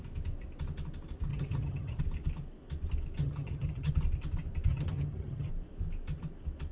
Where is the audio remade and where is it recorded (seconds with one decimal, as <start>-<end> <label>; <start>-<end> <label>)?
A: 0.0-1.3 recorded; 1.3-2.0 remade; 2.0-3.2 recorded; 3.2-3.9 remade; 3.9-4.7 recorded; 4.7-5.5 remade; 5.5-6.7 recorded